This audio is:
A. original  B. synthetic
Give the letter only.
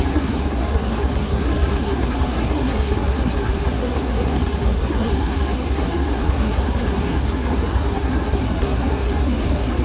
B